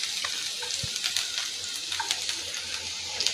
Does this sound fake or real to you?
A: real